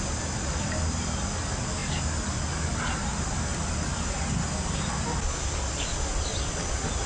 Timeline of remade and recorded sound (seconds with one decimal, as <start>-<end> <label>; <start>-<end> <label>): 0.0-7.1 recorded